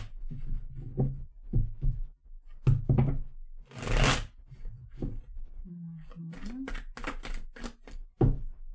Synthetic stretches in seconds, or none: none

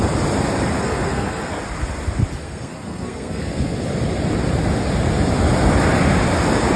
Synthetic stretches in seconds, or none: 0.8-1.6; 2.4-3.8

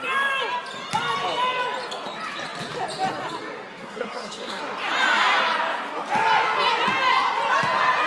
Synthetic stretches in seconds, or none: 3.7-4.6